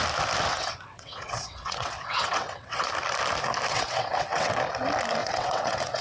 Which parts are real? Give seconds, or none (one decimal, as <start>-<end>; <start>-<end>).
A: 0.0-0.5; 2.9-3.7; 4.6-5.2